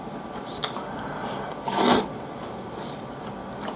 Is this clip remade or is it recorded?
recorded